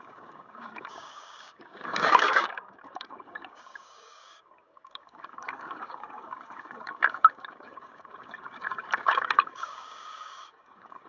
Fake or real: fake